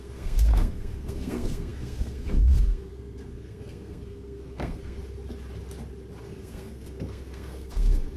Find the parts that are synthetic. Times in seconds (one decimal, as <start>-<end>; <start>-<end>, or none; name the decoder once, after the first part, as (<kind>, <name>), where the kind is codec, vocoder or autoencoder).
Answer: 0.0-5.0 (codec, SNAC); 6.2-8.2